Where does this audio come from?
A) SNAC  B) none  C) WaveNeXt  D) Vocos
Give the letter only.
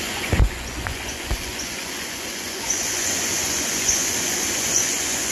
D